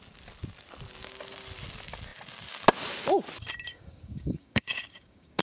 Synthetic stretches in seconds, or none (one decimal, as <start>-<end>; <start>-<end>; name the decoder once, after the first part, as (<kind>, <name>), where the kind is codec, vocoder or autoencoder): 3.7-5.4 (codec, DAC)

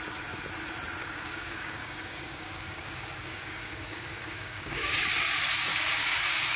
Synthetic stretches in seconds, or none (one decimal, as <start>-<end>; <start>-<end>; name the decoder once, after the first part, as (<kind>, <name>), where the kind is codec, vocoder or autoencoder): 1.0-5.0 (codec, DAC); 5.7-6.6

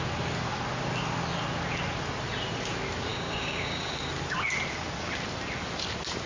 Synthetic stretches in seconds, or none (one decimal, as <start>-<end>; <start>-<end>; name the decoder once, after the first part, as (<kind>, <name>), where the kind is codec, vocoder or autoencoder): 3.1-4.1 (codec, DAC)

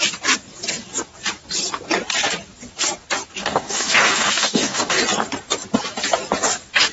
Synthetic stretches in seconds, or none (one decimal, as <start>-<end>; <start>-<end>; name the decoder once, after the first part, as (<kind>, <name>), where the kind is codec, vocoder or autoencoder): 3.4-5.0 (codec, DAC)

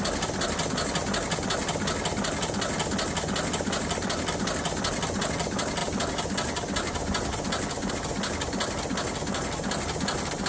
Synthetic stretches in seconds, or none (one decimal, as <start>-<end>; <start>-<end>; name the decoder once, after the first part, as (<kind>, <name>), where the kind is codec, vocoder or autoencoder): none